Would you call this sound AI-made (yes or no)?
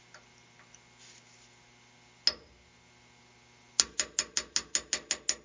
no